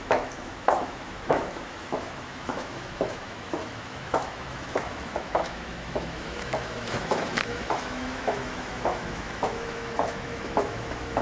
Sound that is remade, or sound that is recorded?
remade